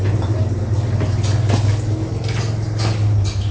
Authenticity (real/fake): real